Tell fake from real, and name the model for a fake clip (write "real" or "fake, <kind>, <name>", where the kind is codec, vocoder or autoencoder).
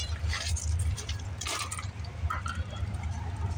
fake, vocoder, BigVGAN v2